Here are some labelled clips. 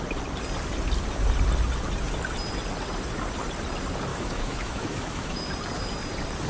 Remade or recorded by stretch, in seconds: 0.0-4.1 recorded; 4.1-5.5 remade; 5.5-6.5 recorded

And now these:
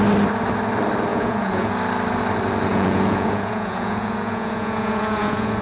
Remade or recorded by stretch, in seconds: 0.0-1.1 recorded; 1.1-1.7 remade; 1.7-2.7 recorded; 2.7-5.6 remade

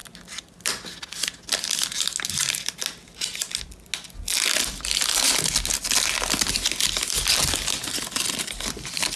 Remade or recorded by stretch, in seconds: 0.0-9.2 recorded

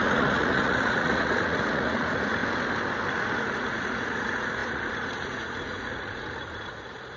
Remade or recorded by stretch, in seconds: 0.0-2.4 remade; 2.4-3.1 recorded; 3.1-7.2 remade